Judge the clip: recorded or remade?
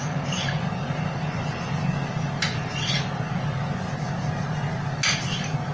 recorded